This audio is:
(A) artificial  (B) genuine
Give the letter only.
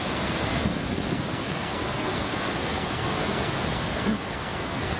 A